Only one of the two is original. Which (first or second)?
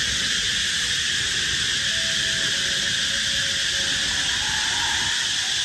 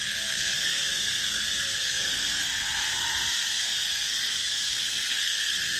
first